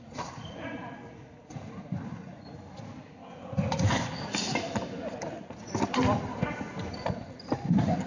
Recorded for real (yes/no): yes